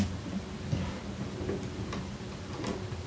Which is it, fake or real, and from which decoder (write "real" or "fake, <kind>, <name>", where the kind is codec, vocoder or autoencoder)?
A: fake, vocoder, BigVGAN v2